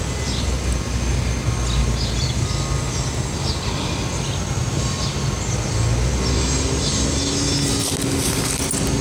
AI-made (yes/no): no